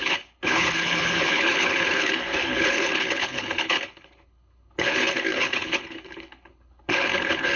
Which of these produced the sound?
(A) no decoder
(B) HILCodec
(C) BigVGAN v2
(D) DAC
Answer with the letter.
B